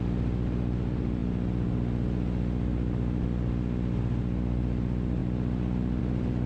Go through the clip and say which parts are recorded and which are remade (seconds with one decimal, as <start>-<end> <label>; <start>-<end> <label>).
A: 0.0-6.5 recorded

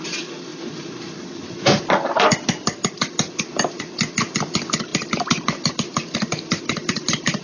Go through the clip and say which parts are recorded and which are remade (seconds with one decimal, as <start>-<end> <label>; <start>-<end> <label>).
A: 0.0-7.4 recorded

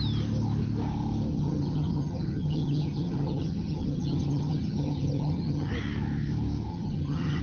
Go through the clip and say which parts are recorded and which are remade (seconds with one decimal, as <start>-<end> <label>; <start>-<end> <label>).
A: 0.0-1.3 recorded; 1.3-5.7 remade; 5.7-6.7 recorded; 6.7-7.4 remade

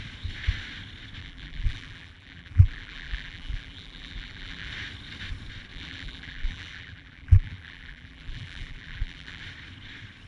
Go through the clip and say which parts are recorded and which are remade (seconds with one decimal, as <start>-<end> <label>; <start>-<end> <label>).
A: 0.0-1.2 recorded; 1.2-4.7 remade; 4.7-5.7 recorded; 5.7-9.4 remade; 9.4-10.3 recorded

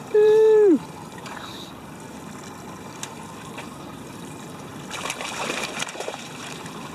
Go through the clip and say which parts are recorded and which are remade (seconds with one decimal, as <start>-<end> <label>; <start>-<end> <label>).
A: 0.0-1.5 remade; 1.5-3.6 recorded; 3.6-4.7 remade; 4.7-5.4 recorded; 5.4-6.9 remade

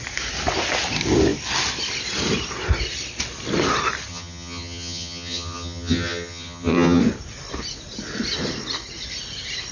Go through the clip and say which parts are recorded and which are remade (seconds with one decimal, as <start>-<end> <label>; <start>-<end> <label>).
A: 0.0-4.1 recorded; 4.1-7.0 remade; 7.0-9.7 recorded